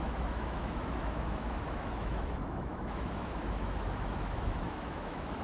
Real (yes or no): no